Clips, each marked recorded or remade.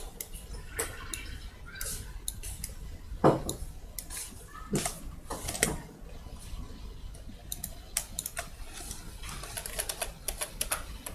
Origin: recorded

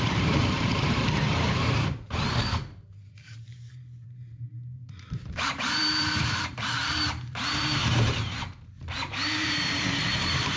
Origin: remade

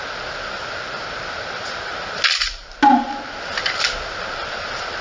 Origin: recorded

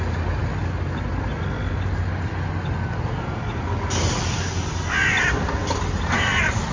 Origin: recorded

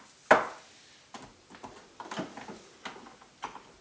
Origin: recorded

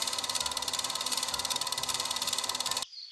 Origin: remade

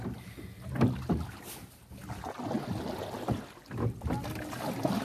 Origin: recorded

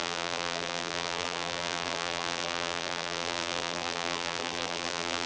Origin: remade